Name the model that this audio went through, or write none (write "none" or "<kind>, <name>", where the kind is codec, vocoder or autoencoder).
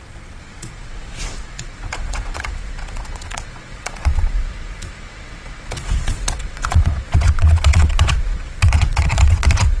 vocoder, WaveNeXt